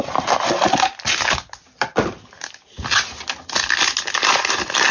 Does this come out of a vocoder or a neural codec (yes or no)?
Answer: no